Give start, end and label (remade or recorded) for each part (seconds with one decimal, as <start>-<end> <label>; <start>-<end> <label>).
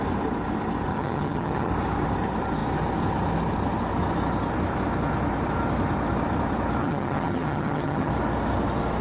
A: 0.0-0.9 recorded; 0.9-1.7 remade; 1.7-6.8 recorded; 6.8-8.1 remade; 8.1-9.0 recorded